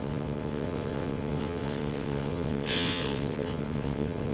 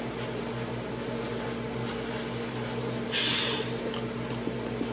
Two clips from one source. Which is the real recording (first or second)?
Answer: second